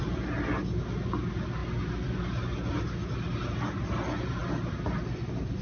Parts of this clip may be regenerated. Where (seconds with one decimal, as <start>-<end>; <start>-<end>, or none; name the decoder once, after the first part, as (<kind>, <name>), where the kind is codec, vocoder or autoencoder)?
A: none